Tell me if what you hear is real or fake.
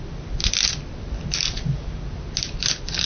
real